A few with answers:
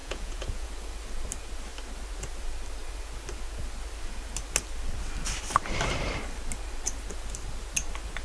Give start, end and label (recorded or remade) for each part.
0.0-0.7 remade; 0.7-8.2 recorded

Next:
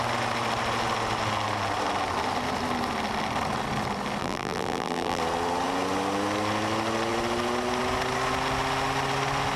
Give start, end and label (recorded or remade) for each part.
0.0-4.2 recorded; 4.2-5.2 remade; 5.2-9.6 recorded